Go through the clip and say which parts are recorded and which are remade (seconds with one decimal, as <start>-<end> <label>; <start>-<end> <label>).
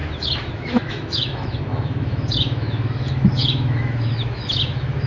0.0-5.1 remade